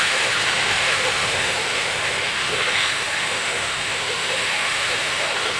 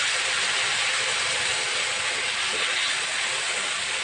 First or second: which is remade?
first